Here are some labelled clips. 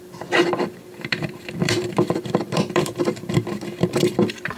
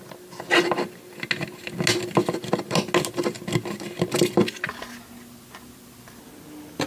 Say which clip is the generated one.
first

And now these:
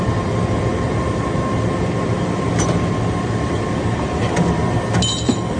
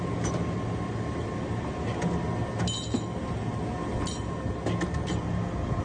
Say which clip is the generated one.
first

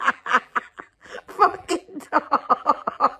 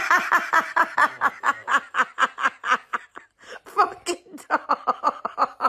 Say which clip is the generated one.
first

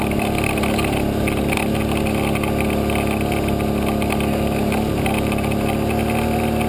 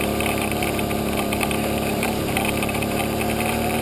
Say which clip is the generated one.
second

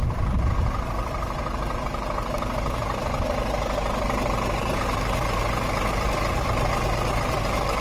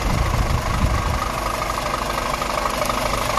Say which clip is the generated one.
first